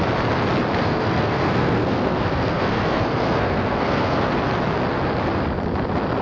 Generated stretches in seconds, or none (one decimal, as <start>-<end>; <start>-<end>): 0.8-4.3